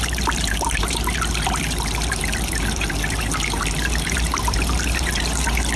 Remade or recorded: remade